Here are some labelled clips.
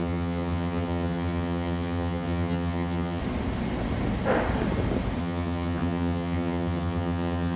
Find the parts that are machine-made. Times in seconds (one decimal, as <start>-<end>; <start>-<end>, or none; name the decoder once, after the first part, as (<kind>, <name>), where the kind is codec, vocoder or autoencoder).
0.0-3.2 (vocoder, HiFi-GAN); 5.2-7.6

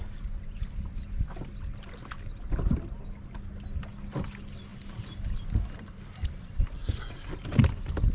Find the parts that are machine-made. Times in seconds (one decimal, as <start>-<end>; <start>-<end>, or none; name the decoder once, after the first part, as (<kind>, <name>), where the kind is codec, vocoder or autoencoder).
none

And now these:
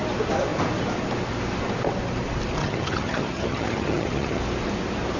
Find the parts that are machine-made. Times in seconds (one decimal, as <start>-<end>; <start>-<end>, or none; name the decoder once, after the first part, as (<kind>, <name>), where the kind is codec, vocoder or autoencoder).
2.6-4.4 (vocoder, HiFi-GAN)

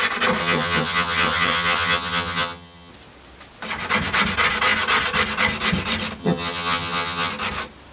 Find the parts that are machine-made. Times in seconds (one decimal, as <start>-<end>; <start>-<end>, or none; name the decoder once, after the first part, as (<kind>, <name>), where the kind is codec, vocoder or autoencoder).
0.4-2.9 (vocoder, HiFi-GAN); 6.2-7.3